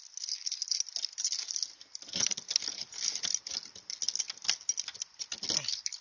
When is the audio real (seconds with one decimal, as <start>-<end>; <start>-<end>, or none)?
0.0-6.0

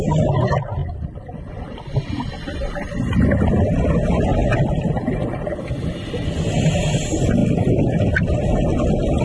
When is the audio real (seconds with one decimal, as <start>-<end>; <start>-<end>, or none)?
0.0-0.8; 3.1-4.4; 5.6-9.2